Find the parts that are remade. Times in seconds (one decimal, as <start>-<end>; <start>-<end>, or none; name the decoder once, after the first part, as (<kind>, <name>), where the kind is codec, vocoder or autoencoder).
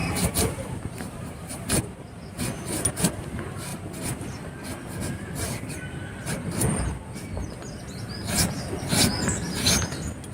0.0-1.8 (vocoder, BigVGAN v2)